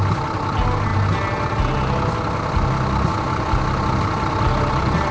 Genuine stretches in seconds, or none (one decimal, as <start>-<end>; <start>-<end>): 0.0-5.1